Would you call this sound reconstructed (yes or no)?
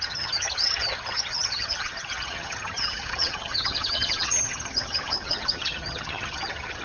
yes